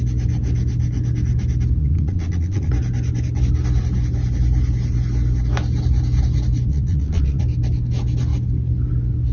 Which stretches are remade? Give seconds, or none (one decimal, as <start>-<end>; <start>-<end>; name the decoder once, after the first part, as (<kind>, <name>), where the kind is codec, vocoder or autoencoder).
1.8-2.7 (vocoder, Vocos); 6.7-7.4